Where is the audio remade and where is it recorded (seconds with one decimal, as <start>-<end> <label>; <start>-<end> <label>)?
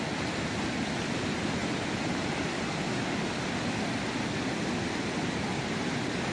0.0-6.3 recorded